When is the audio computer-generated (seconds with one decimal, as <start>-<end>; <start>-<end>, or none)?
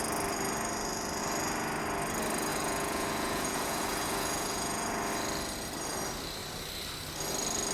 2.5-5.1